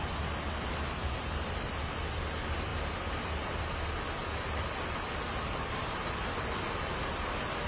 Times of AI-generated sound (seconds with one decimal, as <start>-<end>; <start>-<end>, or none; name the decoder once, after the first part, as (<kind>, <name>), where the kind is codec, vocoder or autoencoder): 1.0-1.8 (vocoder, BigVGAN v2); 2.7-3.7; 5.3-6.2